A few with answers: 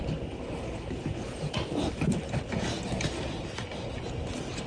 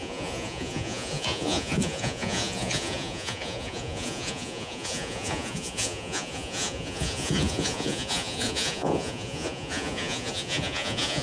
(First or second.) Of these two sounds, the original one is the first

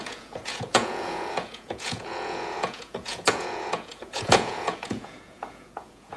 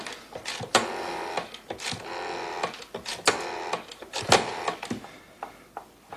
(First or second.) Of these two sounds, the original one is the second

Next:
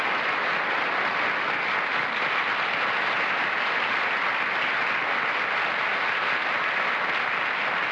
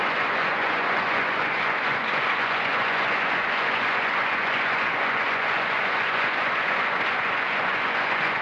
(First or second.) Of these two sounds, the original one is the first